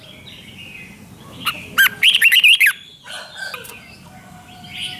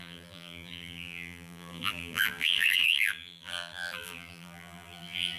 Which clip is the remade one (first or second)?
second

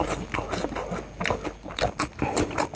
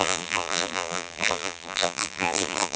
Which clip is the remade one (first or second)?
second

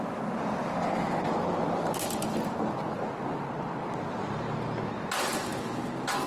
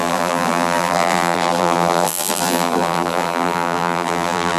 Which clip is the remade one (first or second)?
second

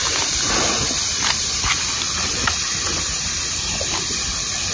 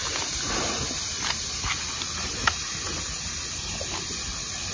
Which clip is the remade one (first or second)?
first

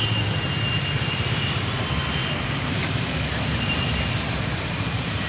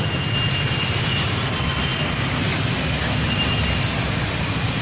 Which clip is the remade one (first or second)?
first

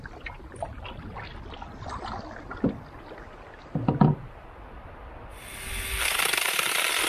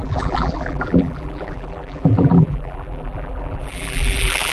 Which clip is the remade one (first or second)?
second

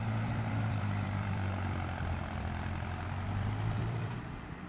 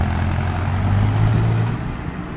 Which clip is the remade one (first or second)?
first